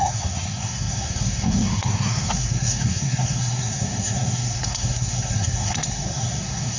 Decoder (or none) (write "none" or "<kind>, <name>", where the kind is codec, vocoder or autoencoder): codec, SNAC